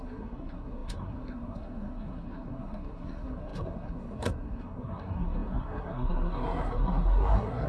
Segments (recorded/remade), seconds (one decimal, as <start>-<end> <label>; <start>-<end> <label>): 0.0-7.7 remade